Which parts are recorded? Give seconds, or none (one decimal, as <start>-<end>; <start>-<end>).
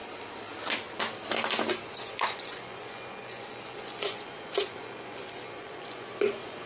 0.0-1.9